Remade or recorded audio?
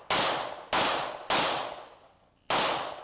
recorded